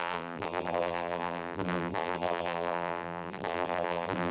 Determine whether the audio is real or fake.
fake